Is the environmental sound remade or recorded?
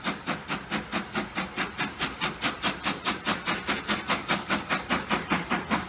recorded